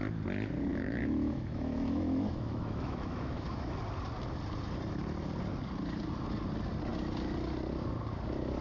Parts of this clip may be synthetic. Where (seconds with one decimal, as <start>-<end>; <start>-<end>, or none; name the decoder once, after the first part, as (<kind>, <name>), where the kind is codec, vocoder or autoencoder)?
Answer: 0.7-3.8 (autoencoder, DAC-VAE)